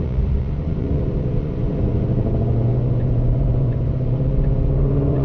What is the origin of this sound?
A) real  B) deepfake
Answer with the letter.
B